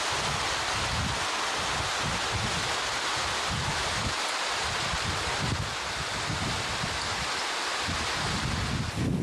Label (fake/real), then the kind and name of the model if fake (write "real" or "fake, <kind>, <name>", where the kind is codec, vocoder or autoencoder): real